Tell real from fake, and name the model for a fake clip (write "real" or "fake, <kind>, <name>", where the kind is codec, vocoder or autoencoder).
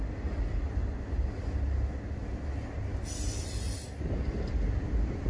real